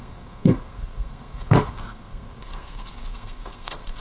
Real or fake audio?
fake